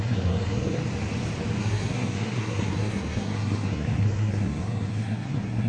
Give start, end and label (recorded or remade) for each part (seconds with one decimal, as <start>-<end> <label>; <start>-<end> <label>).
0.0-0.8 remade; 0.8-1.6 recorded; 1.6-5.7 remade